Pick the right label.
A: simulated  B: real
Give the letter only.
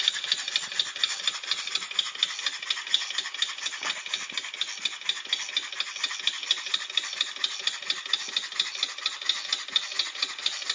B